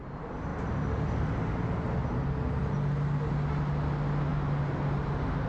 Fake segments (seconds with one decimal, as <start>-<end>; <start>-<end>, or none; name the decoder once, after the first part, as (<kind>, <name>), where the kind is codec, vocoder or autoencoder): none